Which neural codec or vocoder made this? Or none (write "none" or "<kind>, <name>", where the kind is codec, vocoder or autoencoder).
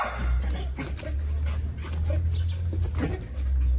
none